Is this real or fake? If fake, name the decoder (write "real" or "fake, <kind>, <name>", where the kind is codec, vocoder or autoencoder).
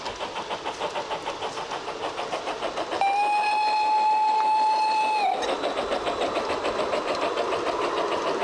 real